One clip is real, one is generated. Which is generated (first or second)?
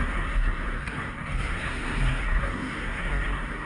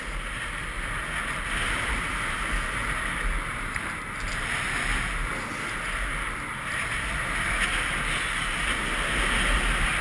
first